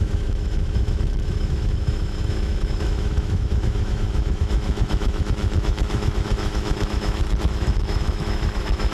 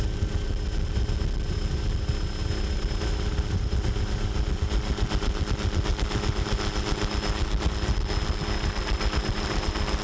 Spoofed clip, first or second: first